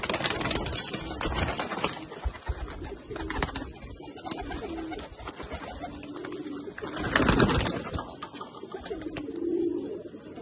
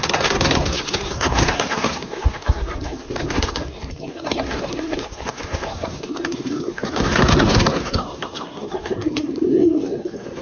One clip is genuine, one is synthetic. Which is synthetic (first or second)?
second